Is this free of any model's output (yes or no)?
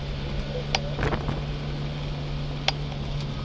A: yes